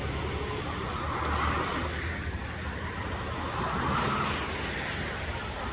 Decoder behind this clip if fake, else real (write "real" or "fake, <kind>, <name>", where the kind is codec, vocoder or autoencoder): real